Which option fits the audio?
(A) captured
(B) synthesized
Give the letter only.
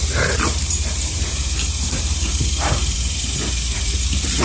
B